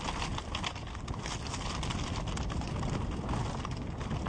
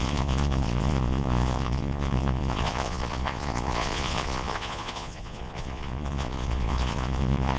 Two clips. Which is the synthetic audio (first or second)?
second